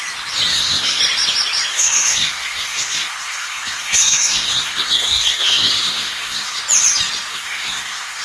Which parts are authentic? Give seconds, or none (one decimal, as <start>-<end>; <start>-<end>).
0.0-0.5; 1.0-1.7; 6.6-7.3